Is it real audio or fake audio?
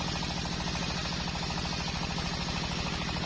real